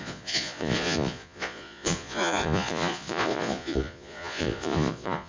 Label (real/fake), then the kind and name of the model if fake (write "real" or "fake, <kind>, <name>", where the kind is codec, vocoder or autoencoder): fake, vocoder, Vocos